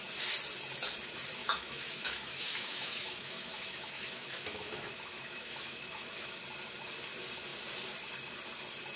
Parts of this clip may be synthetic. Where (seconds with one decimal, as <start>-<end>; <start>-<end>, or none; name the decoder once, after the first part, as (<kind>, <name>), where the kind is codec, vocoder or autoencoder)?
1.4-6.4 (autoencoder, DAC-VAE)